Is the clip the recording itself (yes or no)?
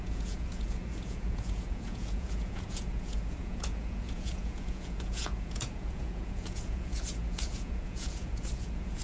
no